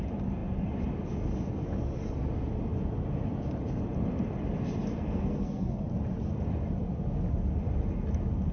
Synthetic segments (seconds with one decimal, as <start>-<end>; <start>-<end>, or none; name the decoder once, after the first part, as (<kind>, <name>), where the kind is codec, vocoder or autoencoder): 4.9-5.8 (codec, SNAC)